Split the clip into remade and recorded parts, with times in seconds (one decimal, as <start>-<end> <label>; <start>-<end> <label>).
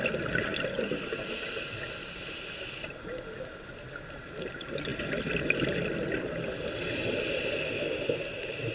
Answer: 0.0-8.7 recorded